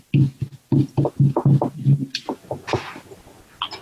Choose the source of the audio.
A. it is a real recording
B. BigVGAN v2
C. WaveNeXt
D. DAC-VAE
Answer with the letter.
A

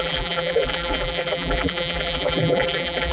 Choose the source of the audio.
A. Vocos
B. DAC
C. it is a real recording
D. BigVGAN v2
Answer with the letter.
D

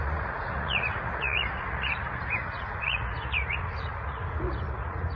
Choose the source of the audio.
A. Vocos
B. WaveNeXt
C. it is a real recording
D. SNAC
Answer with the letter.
A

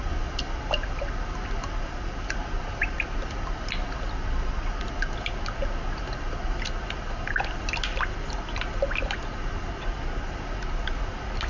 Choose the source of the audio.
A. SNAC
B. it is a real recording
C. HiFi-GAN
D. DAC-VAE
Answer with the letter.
B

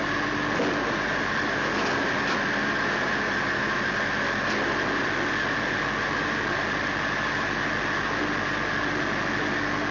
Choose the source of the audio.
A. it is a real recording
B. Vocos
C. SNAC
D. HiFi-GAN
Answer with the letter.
A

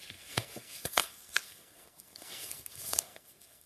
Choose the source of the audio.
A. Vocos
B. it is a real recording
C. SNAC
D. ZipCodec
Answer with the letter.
C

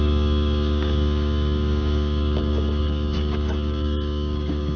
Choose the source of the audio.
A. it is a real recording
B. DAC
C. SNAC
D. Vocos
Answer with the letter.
B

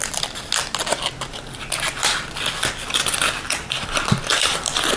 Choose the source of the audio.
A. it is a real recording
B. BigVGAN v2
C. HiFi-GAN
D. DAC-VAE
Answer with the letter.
A